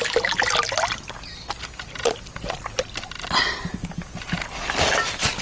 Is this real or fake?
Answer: real